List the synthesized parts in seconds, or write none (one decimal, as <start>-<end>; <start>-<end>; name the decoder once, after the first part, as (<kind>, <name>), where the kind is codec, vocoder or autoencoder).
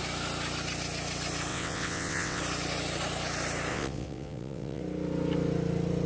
1.5-2.4 (vocoder, WaveNeXt); 3.7-4.8